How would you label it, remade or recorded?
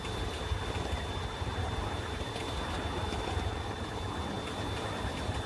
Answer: recorded